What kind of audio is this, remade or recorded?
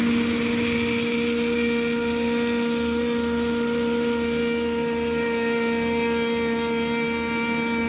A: recorded